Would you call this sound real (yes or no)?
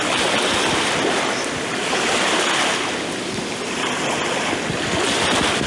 yes